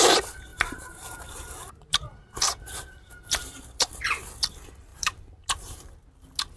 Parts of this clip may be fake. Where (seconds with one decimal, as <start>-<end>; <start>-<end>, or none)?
0.5-3.6; 4.9-5.9